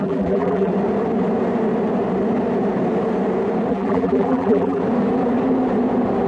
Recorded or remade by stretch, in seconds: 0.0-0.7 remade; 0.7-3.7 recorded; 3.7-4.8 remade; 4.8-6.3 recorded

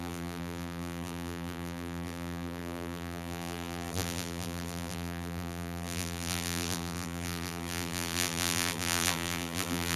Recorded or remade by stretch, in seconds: 0.0-10.0 remade

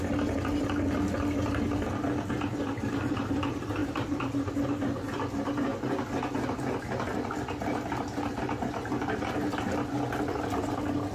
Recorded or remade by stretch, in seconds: 0.0-3.8 recorded; 3.8-4.5 remade; 4.5-11.1 recorded

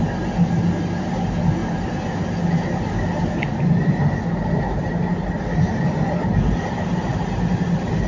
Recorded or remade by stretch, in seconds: 0.0-8.1 recorded

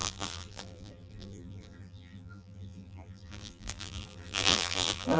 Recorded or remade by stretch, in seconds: 0.0-5.2 remade